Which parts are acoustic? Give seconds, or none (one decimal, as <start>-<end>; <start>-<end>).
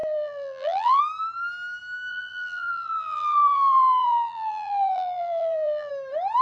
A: 1.0-2.1; 5.9-6.4